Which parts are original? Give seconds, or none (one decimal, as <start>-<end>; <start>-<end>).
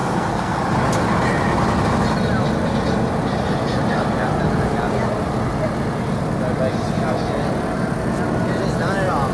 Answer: 0.6-9.3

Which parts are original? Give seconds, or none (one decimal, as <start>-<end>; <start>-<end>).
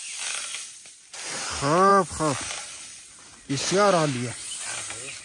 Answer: 0.0-5.2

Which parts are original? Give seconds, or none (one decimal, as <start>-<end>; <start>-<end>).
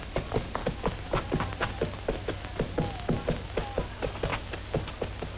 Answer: 0.6-3.8; 4.3-5.4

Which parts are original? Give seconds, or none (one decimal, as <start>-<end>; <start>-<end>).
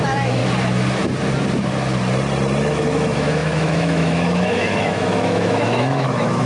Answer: 0.4-2.7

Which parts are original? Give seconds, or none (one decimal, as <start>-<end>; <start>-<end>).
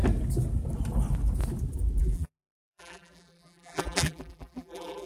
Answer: 0.0-2.0